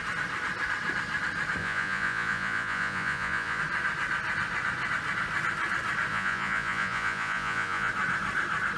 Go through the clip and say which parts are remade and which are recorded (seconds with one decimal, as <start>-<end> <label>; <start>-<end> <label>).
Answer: 0.0-1.6 recorded; 1.6-3.6 remade; 3.6-6.1 recorded; 6.1-7.9 remade; 7.9-8.8 recorded